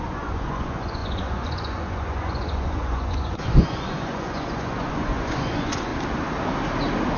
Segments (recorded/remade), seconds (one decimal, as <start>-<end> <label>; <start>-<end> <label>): 0.0-5.9 remade; 5.9-7.2 recorded